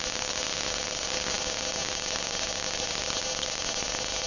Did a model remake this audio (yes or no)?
no